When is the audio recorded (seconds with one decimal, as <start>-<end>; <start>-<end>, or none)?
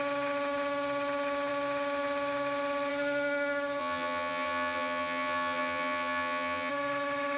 0.0-3.8; 6.7-7.4